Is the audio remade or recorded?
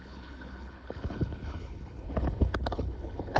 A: remade